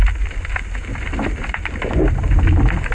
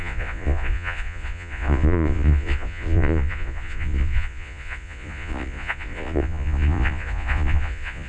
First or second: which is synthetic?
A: second